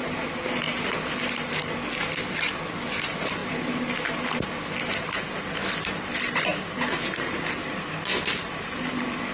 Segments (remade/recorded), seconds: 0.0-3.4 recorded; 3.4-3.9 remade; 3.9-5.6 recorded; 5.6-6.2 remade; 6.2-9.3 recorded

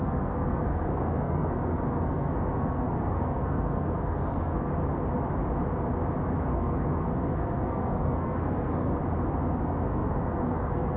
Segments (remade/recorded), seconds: 0.0-4.7 remade; 4.7-6.2 recorded; 6.2-8.9 remade; 8.9-9.6 recorded; 9.6-11.0 remade

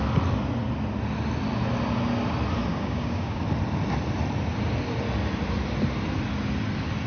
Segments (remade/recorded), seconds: 0.0-2.7 recorded; 2.7-3.4 remade; 3.4-7.1 recorded

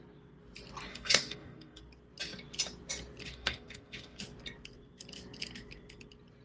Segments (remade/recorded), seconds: 0.0-0.9 recorded; 0.9-1.8 remade; 1.8-3.2 recorded; 3.2-4.2 remade; 4.2-6.4 recorded

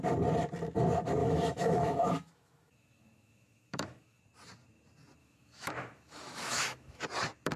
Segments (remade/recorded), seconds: 0.0-1.2 recorded; 1.2-4.2 remade; 4.2-5.2 recorded; 5.2-7.0 remade; 7.0-7.6 recorded